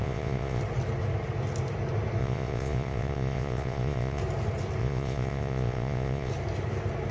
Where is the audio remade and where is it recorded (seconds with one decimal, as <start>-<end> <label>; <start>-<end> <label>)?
0.0-0.6 remade; 0.6-2.2 recorded; 2.2-4.2 remade; 4.2-4.8 recorded; 4.8-6.3 remade; 6.3-7.1 recorded